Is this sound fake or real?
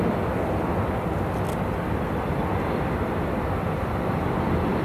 real